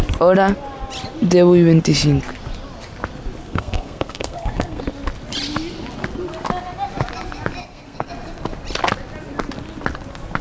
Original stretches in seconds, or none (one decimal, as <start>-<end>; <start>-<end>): 0.0-3.4; 4.8-7.6; 8.1-10.4